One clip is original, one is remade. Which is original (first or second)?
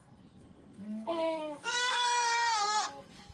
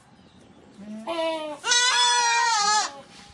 second